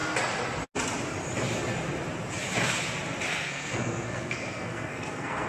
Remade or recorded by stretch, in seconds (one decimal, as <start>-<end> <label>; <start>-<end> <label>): 0.0-3.3 recorded; 3.3-5.5 remade